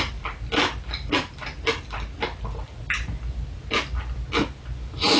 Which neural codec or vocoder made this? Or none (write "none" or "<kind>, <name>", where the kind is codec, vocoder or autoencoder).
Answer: none